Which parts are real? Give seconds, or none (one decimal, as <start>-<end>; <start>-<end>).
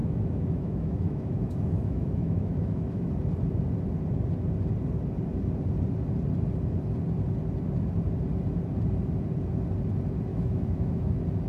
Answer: 3.1-10.3; 11.1-11.5